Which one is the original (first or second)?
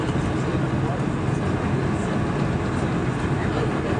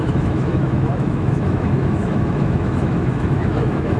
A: first